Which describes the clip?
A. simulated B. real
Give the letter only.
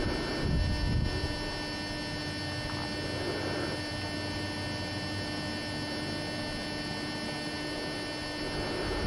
B